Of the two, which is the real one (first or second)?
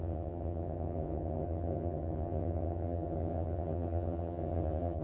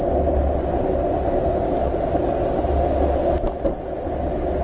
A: second